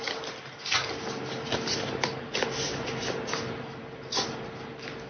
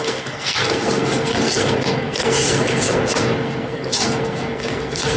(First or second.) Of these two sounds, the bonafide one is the first